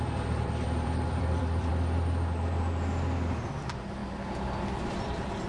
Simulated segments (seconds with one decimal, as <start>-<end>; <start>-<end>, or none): 0.0-1.7; 3.3-4.0; 4.9-5.5